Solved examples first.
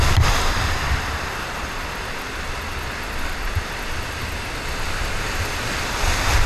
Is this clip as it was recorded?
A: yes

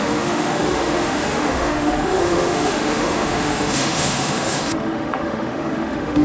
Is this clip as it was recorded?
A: no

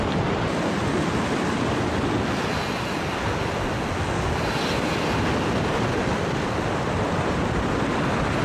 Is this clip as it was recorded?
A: yes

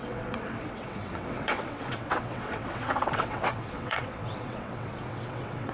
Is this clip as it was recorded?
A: no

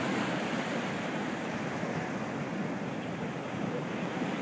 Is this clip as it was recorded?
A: yes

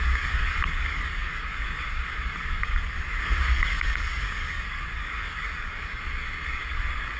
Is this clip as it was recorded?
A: no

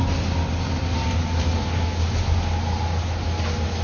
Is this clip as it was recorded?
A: yes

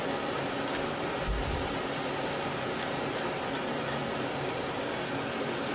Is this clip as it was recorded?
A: yes